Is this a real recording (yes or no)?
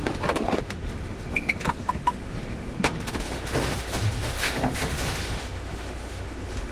no